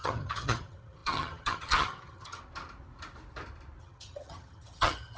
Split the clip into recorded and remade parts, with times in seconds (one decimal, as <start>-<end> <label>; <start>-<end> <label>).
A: 0.0-2.4 remade; 2.4-3.8 recorded; 3.8-5.2 remade